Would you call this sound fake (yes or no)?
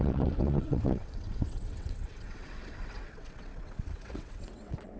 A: yes